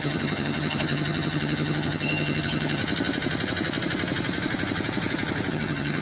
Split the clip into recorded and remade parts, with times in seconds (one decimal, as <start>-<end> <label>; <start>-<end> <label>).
0.0-2.8 remade; 2.8-5.5 recorded; 5.5-6.0 remade